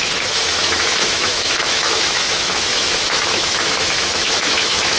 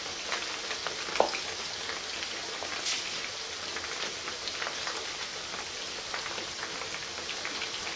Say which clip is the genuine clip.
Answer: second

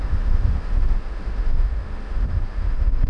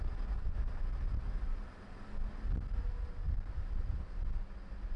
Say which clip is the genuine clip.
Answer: second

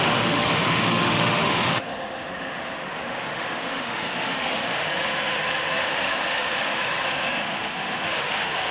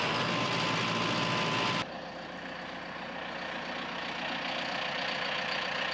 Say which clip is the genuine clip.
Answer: second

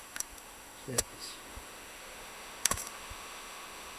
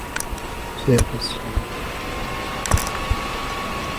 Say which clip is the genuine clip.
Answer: second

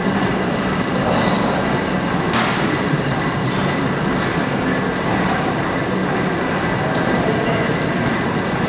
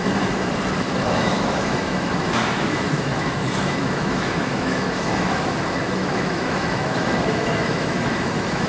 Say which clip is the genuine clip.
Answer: first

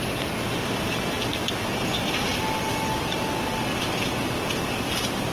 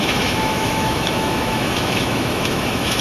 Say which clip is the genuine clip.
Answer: first